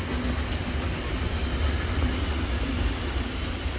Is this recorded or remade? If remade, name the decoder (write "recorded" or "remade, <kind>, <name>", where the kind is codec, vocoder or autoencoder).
recorded